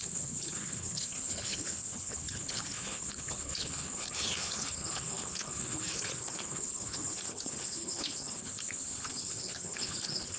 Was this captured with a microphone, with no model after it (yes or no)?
no